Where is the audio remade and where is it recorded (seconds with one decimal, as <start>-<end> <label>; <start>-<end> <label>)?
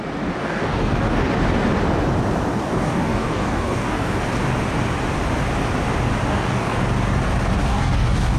0.0-0.4 recorded; 0.4-1.3 remade; 1.3-2.5 recorded; 2.5-4.2 remade; 4.2-6.3 recorded; 6.3-6.8 remade; 6.8-7.6 recorded; 7.6-8.4 remade